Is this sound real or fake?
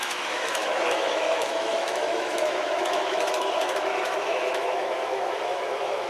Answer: fake